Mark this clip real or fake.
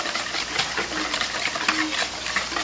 real